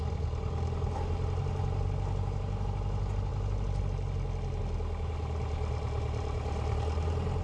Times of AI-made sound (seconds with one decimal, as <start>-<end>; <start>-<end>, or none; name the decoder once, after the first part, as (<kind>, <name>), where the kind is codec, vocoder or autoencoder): none